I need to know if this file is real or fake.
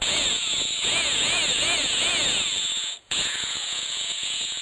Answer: fake